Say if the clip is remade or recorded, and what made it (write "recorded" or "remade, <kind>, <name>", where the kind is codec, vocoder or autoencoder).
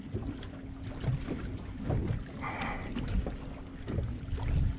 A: recorded